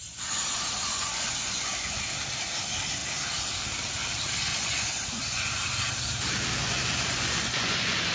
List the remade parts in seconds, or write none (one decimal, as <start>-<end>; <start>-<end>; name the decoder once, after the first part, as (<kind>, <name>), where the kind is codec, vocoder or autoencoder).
0.0-2.0 (vocoder, Vocos); 4.5-5.5; 6.6-8.1